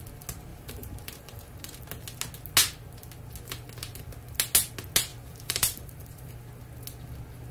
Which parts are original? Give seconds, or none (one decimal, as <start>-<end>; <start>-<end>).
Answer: 0.0-0.5; 1.8-5.1; 6.3-7.5